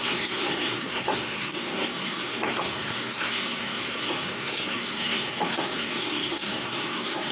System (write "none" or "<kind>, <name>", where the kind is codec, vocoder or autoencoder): codec, SNAC